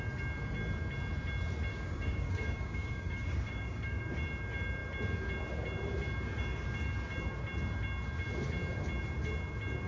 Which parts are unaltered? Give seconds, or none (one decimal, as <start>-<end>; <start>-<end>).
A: 0.0-1.7; 4.0-9.9